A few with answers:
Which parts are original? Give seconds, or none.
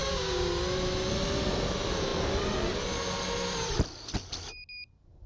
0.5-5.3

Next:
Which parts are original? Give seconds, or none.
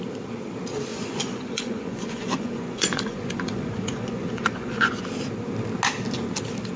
0.0-0.9; 5.0-6.8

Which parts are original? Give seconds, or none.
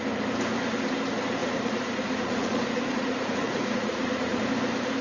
0.0-1.4; 4.4-5.0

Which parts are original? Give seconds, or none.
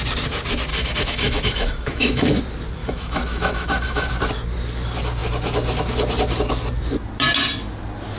0.0-0.7; 2.4-2.8; 4.1-8.2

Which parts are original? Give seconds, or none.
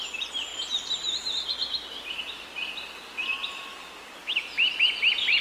0.0-0.5; 2.7-3.4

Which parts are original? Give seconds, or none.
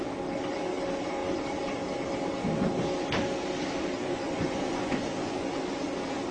0.0-4.0; 5.6-6.3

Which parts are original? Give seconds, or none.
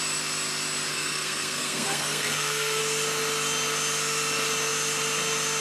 0.0-0.9; 2.8-5.6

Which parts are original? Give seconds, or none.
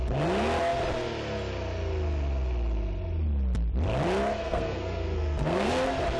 0.0-4.4; 5.7-6.2